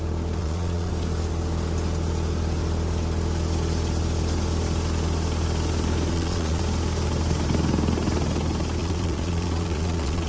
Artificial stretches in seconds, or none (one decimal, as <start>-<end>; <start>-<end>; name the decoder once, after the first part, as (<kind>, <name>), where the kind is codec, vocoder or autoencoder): 0.4-0.9 (vocoder, Vocos); 6.1-6.6; 8.8-10.3